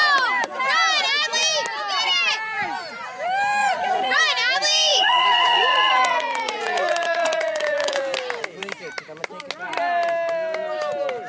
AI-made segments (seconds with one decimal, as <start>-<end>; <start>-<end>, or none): 3.6-4.2; 4.9-8.0